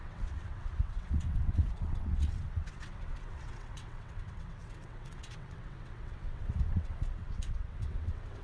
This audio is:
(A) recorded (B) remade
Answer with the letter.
B